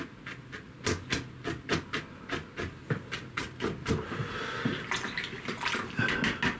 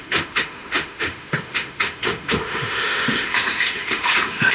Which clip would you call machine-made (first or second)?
second